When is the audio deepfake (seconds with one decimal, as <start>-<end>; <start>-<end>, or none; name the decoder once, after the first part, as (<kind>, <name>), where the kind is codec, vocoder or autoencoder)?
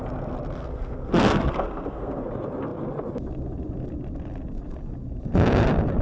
0.6-2.2 (codec, SNAC)